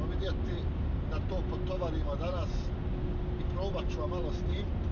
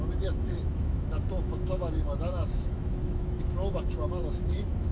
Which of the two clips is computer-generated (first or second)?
second